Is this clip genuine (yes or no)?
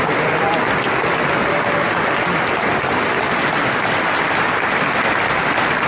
yes